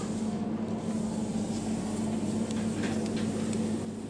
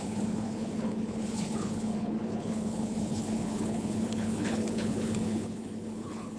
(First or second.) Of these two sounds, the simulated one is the second